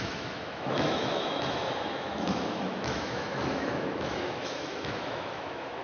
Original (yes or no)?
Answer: no